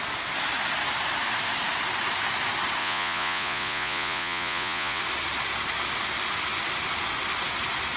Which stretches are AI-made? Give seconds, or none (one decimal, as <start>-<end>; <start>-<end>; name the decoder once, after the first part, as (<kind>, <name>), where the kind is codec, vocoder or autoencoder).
2.8-5.0 (vocoder, Vocos)